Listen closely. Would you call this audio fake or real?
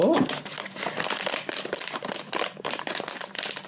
real